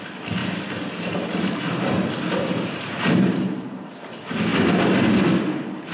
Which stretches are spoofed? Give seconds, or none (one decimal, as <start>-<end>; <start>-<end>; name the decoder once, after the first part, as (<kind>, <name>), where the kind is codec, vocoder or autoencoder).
0.4-3.9 (vocoder, BigVGAN v2)